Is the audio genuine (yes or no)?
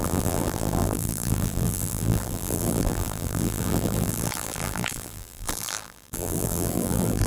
no